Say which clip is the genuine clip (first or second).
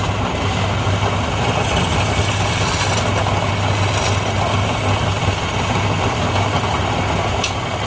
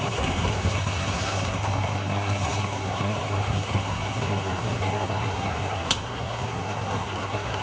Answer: first